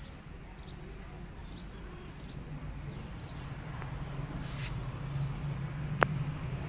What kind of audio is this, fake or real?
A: real